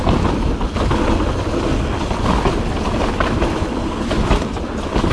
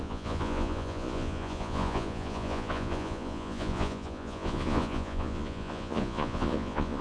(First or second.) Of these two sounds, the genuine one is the first